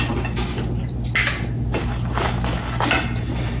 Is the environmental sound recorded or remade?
recorded